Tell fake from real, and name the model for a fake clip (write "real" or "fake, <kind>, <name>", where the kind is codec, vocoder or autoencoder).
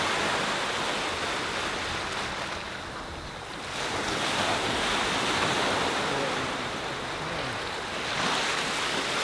real